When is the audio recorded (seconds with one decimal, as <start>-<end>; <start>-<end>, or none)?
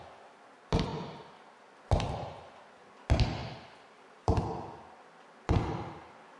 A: 0.0-6.4